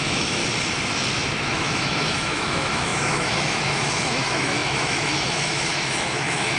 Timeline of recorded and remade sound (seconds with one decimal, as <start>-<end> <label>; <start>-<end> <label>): 0.0-0.4 remade; 0.4-1.4 recorded; 1.4-6.6 remade